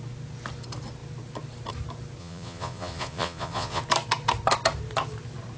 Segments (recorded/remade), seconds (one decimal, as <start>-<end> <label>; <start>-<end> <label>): 0.0-2.2 recorded; 2.2-3.8 remade; 3.8-5.6 recorded